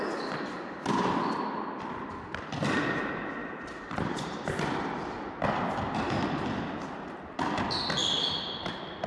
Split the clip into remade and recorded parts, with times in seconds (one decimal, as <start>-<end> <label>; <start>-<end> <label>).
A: 0.0-3.4 recorded; 3.4-4.5 remade; 4.5-9.1 recorded

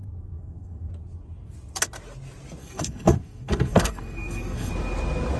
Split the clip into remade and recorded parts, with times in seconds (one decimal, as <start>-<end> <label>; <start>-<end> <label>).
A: 0.0-0.9 remade; 0.9-2.6 recorded; 2.6-4.7 remade; 4.7-5.4 recorded